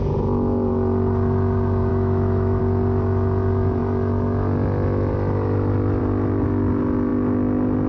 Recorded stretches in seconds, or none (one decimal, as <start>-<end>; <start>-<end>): 0.0-1.9; 2.6-7.9